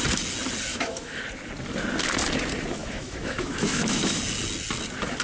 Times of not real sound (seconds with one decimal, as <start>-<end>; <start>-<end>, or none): 0.7-1.2; 2.8-4.2